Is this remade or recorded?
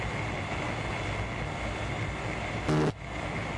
recorded